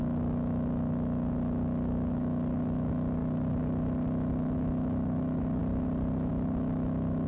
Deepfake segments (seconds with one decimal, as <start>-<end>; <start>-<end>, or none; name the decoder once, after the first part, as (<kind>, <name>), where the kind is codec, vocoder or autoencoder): 0.0-3.2 (autoencoder, DAC-VAE); 4.3-5.6; 6.3-7.3